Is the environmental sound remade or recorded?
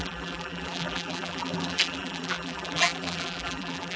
remade